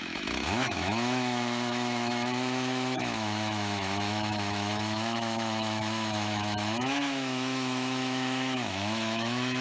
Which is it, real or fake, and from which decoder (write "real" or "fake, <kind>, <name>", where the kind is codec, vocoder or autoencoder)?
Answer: fake, autoencoder, DAC-VAE